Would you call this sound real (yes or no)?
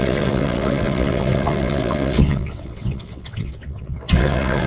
no